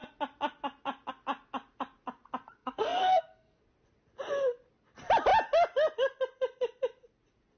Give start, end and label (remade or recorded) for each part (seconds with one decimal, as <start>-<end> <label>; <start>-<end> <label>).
0.0-2.6 recorded; 2.6-3.6 remade; 3.6-7.6 recorded